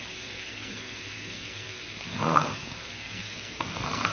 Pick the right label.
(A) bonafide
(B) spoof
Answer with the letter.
B